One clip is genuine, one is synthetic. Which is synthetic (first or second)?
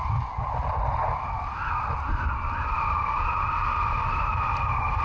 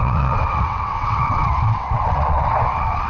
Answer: second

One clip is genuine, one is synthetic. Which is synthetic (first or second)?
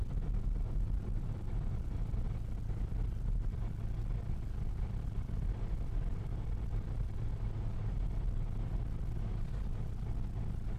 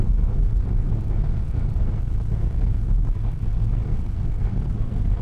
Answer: second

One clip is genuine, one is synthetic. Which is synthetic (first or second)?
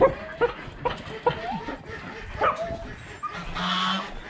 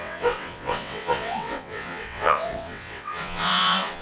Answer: second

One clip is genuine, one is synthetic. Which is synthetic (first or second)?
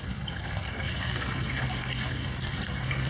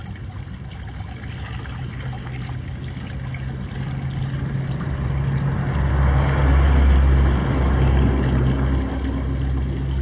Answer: first